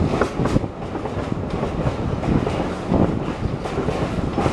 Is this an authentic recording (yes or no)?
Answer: yes